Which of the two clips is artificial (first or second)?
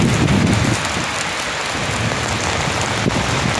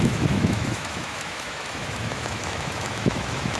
second